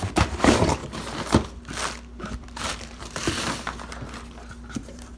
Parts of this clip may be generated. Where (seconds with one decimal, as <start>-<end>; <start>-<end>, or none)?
0.0-0.8; 2.2-3.2; 4.8-5.2